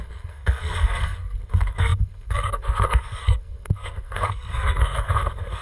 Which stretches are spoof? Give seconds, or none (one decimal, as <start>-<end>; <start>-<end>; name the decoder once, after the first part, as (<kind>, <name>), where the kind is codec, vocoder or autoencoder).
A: 0.0-5.6 (codec, SNAC)